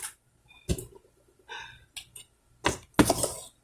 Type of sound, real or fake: real